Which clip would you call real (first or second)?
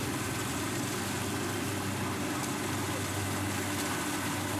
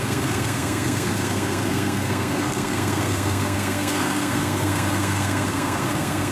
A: first